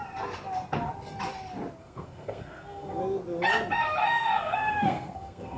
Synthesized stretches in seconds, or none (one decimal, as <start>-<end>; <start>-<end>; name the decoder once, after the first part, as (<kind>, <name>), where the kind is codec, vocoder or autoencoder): 1.8-3.0 (codec, SNAC); 4.0-5.6